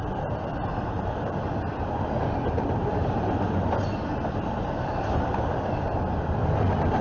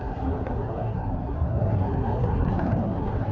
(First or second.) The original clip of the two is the first